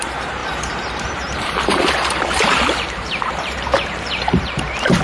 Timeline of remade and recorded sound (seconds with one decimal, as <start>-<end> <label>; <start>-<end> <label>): 0.0-5.0 remade